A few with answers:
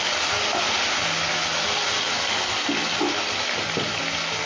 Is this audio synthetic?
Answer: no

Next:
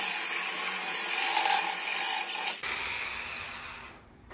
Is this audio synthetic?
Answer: no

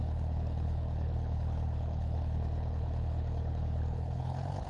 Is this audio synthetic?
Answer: yes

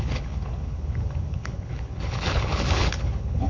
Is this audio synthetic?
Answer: yes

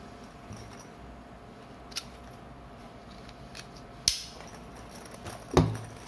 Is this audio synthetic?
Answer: no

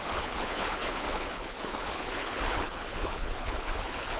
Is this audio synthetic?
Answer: yes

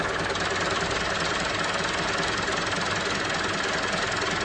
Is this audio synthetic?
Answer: no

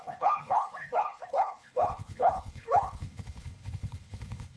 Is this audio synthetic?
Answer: yes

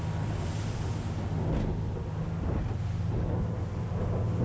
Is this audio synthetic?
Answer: no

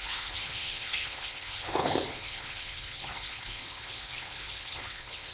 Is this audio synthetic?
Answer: yes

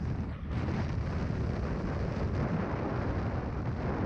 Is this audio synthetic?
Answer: no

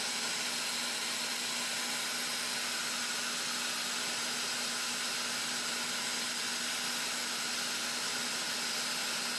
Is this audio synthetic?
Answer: no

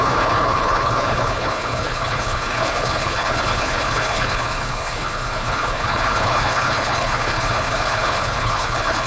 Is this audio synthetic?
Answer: yes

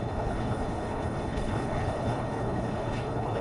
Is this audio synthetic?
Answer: yes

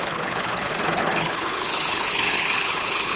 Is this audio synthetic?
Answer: yes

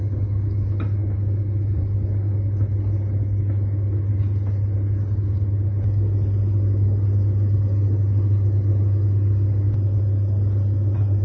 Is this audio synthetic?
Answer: no